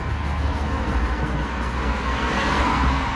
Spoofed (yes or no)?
yes